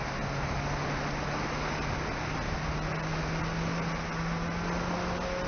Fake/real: real